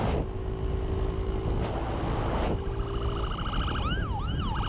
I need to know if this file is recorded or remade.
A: recorded